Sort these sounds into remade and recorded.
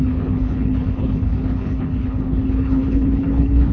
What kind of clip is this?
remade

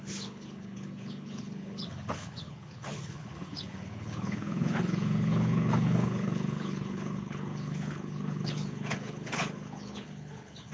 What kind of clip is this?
remade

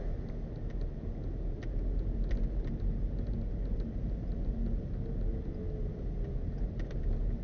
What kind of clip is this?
recorded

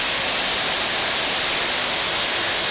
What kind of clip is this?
recorded